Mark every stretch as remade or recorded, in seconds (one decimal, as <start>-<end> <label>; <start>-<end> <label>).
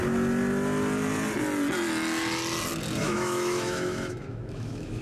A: 0.0-3.0 recorded; 3.0-5.0 remade